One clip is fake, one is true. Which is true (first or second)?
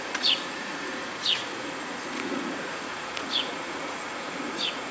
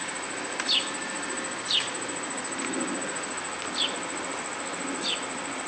second